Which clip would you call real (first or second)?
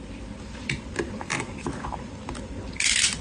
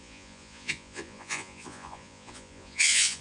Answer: first